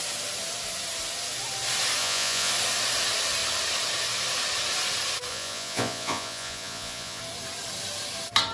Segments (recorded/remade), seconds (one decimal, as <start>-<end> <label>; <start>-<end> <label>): 0.0-2.0 recorded; 2.0-2.5 remade; 2.5-5.3 recorded; 5.3-7.2 remade; 7.2-8.5 recorded